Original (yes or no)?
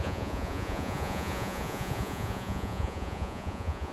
no